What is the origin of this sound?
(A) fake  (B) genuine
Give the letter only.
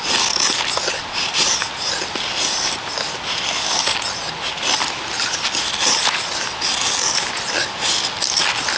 B